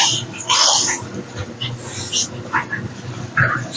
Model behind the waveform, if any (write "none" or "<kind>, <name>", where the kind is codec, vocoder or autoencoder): none